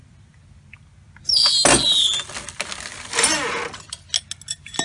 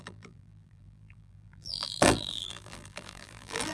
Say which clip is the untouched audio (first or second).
first